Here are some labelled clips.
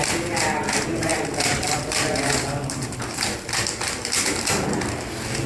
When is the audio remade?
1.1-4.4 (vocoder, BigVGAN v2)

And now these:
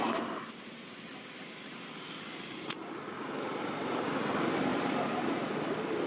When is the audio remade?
4.7-5.6 (vocoder, BigVGAN v2)

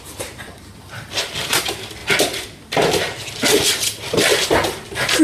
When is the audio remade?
none

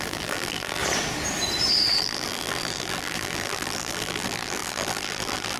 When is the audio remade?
0.0-0.8 (vocoder, BigVGAN v2); 2.0-5.6

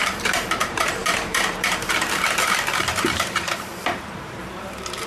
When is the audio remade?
0.0-5.1 (vocoder, BigVGAN v2)

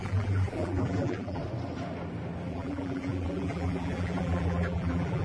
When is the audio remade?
0.0-1.4 (vocoder, BigVGAN v2); 2.5-5.2